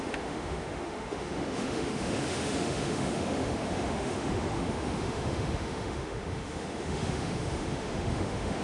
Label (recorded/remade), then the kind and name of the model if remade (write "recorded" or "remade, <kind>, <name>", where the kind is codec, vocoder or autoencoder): remade, autoencoder, DAC-VAE